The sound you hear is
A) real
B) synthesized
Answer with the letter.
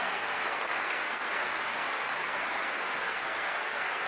B